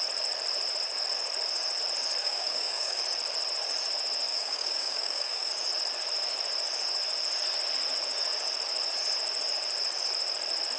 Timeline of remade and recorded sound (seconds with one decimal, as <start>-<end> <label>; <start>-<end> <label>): 0.0-2.2 recorded; 2.2-3.0 remade; 3.0-4.3 recorded; 4.3-5.5 remade; 5.5-10.8 recorded